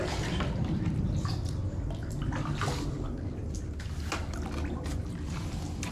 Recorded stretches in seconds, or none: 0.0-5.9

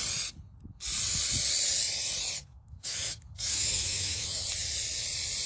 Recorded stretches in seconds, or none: 0.0-2.4; 4.4-5.5